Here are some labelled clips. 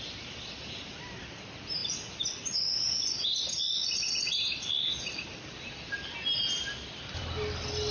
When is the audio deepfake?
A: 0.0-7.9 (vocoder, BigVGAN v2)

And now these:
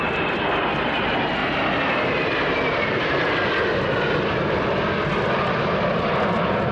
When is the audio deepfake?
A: none

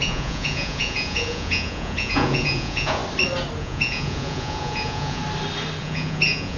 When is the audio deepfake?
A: 0.0-3.0 (vocoder, Vocos); 3.6-5.2; 5.8-6.6

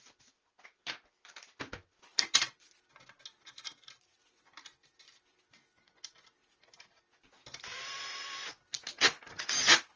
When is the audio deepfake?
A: none

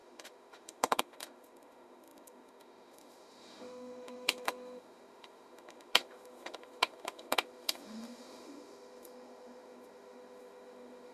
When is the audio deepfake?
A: 0.0-11.1 (autoencoder, DAC-VAE)

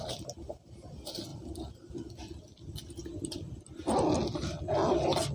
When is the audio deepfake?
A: none

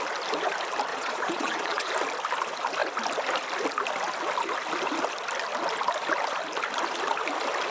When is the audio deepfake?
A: 0.9-1.9 (vocoder, Vocos)

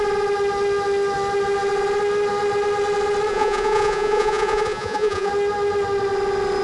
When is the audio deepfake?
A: 3.3-5.3 (vocoder, Vocos)